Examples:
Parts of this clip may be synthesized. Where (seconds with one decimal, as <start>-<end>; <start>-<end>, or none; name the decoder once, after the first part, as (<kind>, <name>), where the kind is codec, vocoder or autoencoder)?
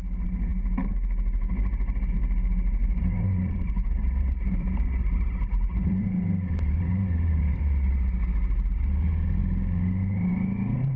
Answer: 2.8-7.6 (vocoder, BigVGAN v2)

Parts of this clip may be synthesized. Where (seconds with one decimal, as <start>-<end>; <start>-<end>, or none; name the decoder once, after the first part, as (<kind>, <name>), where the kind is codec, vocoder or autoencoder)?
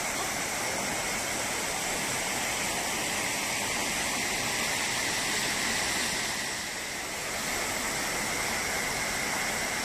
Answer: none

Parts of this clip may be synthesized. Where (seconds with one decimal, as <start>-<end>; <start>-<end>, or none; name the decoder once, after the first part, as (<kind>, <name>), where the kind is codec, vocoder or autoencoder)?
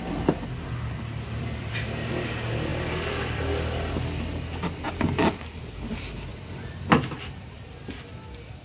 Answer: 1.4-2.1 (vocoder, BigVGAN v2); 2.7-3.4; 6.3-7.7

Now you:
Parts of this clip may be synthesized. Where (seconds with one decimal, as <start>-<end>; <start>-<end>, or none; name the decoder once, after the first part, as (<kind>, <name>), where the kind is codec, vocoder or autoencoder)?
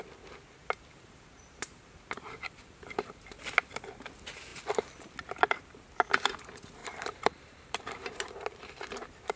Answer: 0.6-3.2 (vocoder, BigVGAN v2); 6.8-9.4